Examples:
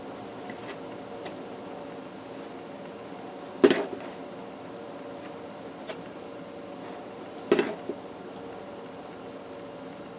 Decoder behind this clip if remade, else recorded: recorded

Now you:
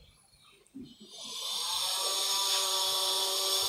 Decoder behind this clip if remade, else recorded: remade, vocoder, BigVGAN v2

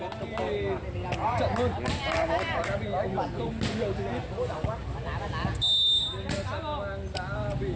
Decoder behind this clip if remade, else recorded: recorded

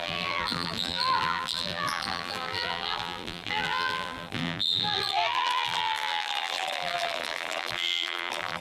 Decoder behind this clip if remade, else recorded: remade, vocoder, BigVGAN v2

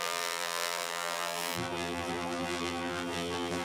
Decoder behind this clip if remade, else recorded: remade, vocoder, BigVGAN v2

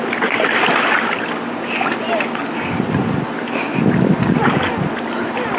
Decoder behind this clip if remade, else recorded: recorded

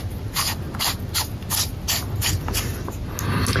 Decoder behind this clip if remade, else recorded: recorded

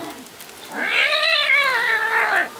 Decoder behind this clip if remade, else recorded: recorded